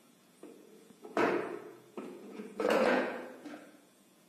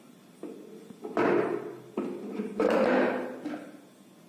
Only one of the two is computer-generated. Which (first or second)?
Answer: first